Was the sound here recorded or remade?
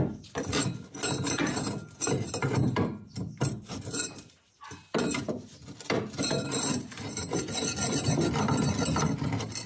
recorded